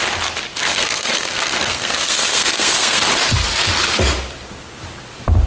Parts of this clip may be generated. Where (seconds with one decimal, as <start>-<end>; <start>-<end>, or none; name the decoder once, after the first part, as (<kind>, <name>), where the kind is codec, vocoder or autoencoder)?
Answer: 0.5-3.0 (codec, SNAC)